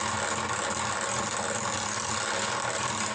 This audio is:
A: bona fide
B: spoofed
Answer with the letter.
A